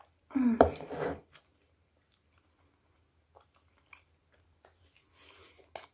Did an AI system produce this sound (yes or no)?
no